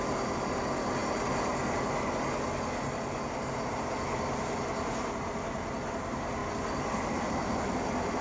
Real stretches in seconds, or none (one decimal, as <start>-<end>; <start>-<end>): 0.0-6.4; 7.0-8.2